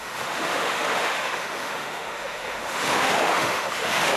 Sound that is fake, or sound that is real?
fake